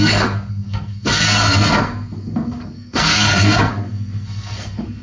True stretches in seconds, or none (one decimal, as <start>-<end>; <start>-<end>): none